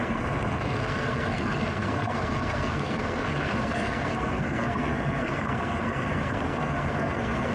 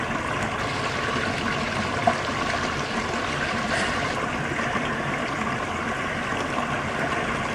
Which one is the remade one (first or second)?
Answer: first